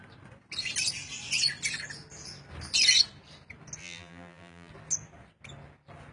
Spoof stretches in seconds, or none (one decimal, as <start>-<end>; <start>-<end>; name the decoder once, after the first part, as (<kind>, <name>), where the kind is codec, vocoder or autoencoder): 3.8-4.7 (vocoder, BigVGAN v2)